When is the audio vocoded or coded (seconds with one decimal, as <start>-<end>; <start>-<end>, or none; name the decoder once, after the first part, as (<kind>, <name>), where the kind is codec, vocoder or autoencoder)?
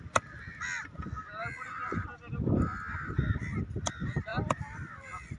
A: 4.3-5.4 (vocoder, BigVGAN v2)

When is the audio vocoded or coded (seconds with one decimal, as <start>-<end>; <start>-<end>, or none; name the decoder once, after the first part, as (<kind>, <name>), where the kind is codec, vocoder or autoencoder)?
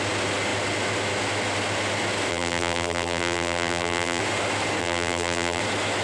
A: 2.3-4.2 (vocoder, BigVGAN v2); 4.8-5.6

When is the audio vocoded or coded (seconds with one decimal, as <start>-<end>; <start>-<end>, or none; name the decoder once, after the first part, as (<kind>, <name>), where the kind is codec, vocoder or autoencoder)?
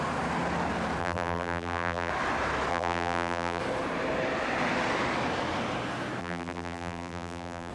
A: 1.0-2.1 (vocoder, BigVGAN v2); 2.7-3.6; 6.2-7.7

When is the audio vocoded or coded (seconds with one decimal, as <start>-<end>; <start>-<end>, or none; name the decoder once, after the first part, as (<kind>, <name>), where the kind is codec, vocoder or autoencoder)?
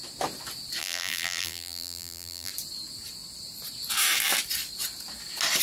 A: 0.8-2.5 (vocoder, BigVGAN v2)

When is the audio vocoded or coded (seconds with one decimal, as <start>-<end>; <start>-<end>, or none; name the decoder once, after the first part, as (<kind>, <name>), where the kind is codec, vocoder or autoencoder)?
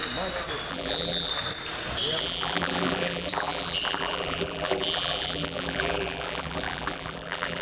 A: 0.7-1.3 (vocoder, BigVGAN v2); 2.2-7.6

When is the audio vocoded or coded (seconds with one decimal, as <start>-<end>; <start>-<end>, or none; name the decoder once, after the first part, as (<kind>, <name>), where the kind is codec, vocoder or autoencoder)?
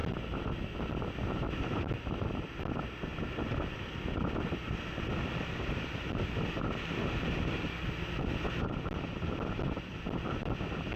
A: none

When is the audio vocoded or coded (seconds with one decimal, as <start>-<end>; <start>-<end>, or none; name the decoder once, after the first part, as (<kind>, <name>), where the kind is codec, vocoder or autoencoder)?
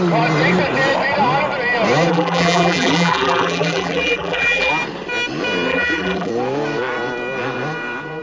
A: 2.1-4.7 (vocoder, BigVGAN v2); 5.7-6.3